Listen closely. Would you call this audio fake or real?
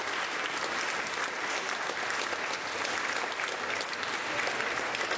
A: real